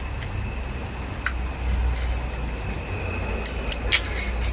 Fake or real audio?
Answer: real